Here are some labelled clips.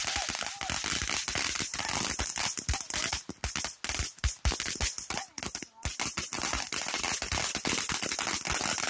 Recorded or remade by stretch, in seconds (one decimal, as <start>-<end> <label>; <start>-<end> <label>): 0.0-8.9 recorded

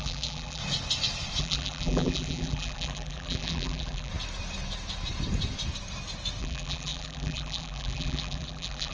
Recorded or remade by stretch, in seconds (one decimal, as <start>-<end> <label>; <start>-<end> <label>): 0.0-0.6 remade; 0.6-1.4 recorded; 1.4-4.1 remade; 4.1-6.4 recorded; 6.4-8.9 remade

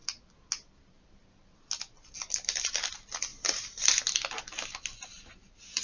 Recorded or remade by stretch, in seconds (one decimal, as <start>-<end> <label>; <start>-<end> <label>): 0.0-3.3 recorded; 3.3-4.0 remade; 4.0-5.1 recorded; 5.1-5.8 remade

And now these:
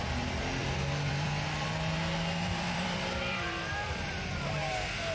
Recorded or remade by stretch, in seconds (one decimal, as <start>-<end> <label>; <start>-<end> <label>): 0.0-5.1 remade